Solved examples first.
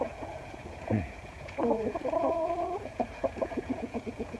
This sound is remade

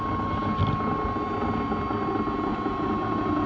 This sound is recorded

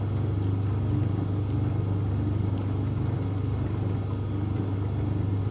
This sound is recorded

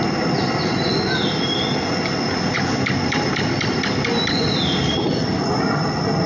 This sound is recorded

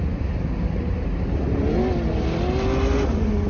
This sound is recorded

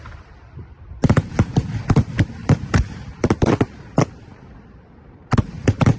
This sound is remade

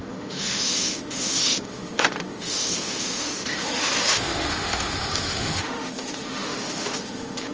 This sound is remade